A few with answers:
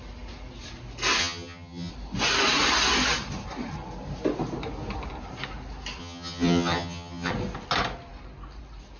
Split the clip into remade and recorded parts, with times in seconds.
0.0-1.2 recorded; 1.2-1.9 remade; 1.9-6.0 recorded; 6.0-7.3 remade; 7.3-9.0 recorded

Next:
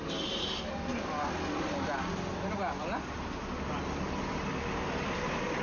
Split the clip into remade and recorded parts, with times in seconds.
0.0-5.6 recorded

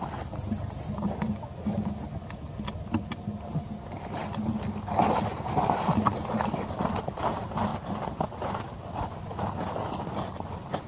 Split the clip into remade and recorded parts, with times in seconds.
0.0-10.9 recorded

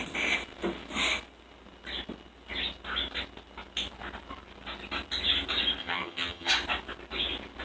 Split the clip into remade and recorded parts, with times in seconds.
0.0-5.8 recorded; 5.8-6.5 remade; 6.5-7.6 recorded

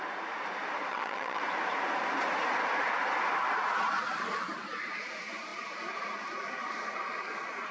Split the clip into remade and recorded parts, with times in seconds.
0.0-0.9 recorded; 0.9-1.4 remade; 1.4-7.7 recorded

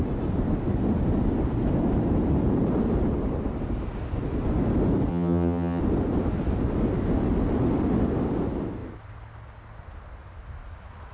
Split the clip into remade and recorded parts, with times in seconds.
0.0-5.1 recorded; 5.1-5.8 remade; 5.8-11.1 recorded

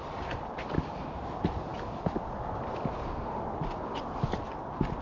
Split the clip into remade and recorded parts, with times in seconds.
0.0-5.0 recorded